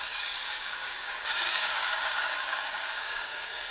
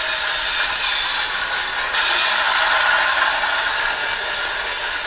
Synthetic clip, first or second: first